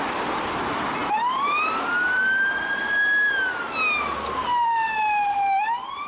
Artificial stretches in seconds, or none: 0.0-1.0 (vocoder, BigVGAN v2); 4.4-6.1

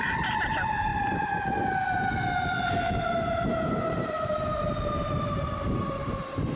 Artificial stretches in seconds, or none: 0.0-6.6 (vocoder, BigVGAN v2)

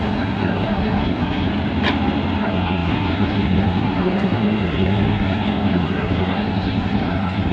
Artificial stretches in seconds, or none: 0.0-1.5 (codec, SNAC); 2.4-7.5